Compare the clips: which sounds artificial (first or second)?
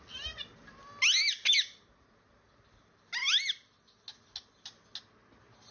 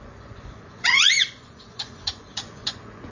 second